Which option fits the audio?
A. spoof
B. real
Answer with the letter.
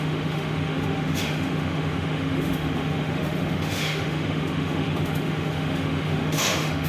A